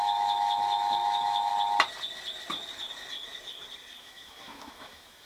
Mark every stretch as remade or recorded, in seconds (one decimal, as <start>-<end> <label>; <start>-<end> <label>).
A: 0.0-1.5 remade; 1.5-4.0 recorded; 4.0-5.3 remade